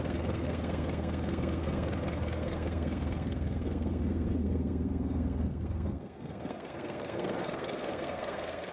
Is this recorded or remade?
remade